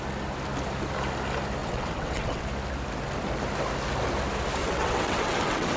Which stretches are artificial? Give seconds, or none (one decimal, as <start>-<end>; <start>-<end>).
1.6-2.4; 4.6-5.8